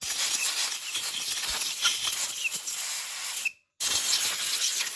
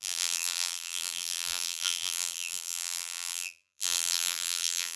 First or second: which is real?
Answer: first